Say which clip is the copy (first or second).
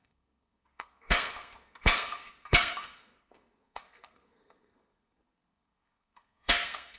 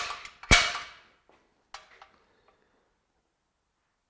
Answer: first